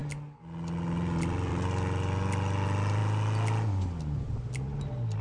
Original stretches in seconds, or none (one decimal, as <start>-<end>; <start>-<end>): 0.0-5.2